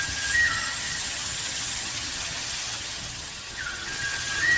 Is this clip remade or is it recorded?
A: remade